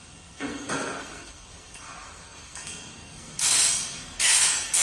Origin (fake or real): fake